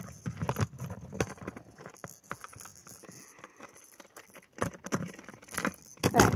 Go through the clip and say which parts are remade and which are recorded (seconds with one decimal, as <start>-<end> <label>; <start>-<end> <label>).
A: 0.0-6.4 recorded